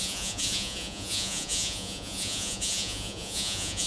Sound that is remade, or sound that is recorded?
remade